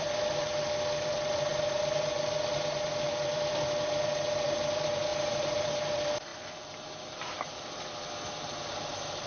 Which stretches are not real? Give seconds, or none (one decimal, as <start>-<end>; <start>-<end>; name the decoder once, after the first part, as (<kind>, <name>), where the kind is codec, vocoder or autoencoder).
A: 0.0-6.3 (vocoder, BigVGAN v2); 7.1-9.3